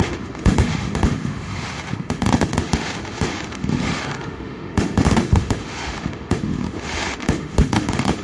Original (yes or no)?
no